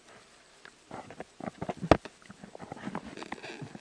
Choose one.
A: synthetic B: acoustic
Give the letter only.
B